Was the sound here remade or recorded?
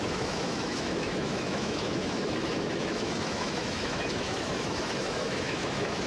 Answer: remade